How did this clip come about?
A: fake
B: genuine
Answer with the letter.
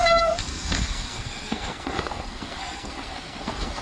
A